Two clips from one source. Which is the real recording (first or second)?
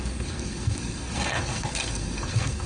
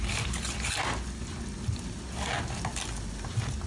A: second